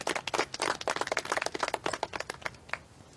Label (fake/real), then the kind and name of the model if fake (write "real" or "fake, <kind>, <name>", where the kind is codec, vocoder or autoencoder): real